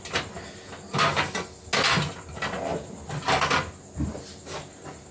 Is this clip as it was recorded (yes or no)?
yes